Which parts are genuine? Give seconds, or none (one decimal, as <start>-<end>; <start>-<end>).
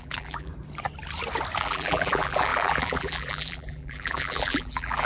0.5-1.6